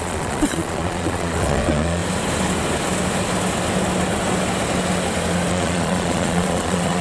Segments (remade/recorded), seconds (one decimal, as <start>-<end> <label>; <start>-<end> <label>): 0.0-2.0 remade; 2.0-5.5 recorded; 5.5-7.0 remade